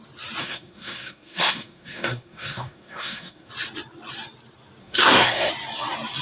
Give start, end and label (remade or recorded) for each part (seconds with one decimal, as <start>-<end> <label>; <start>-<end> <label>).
0.0-0.4 recorded; 0.4-3.5 remade; 3.5-4.8 recorded; 4.8-5.5 remade; 5.5-6.2 recorded